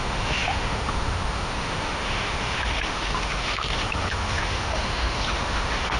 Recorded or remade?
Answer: remade